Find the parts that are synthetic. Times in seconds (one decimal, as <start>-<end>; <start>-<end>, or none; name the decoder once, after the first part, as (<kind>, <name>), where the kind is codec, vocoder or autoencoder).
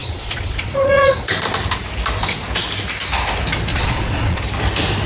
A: 0.0-1.3 (vocoder, Vocos); 3.7-4.4